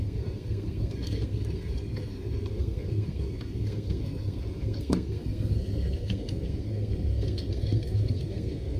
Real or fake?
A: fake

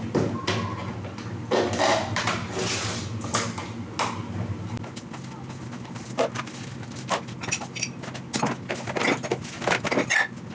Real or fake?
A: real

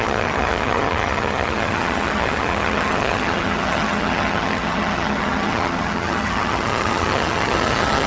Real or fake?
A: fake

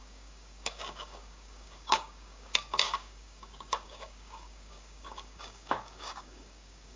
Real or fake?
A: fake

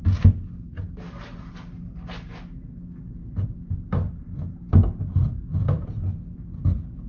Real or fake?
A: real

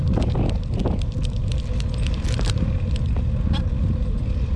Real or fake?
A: real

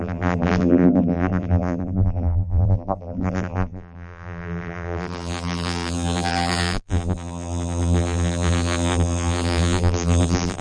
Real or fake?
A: fake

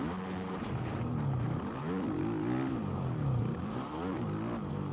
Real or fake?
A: real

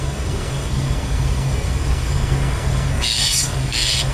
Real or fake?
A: fake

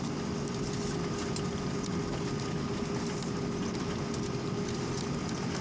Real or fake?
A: real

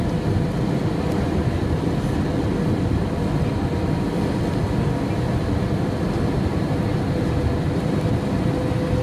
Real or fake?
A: real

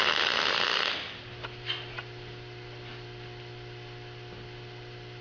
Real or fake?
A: real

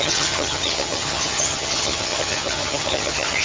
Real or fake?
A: fake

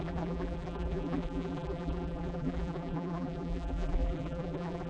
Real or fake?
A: fake